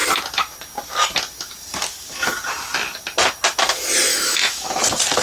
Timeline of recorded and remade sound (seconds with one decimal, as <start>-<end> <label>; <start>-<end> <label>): 0.0-4.1 recorded; 4.1-4.8 remade; 4.8-5.2 recorded